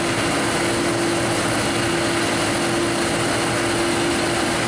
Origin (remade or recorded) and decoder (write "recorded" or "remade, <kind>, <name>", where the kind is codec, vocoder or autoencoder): recorded